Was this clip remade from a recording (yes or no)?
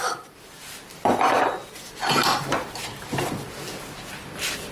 no